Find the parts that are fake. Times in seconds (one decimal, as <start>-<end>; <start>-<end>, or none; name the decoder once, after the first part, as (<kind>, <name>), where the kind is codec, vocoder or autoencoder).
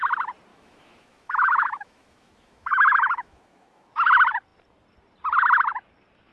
0.5-3.9 (autoencoder, DAC-VAE)